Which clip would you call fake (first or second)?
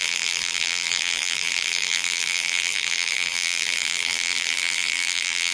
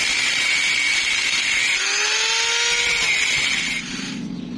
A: first